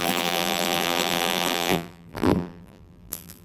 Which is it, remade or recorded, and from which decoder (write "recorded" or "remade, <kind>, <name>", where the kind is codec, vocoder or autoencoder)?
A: remade, vocoder, BigVGAN v2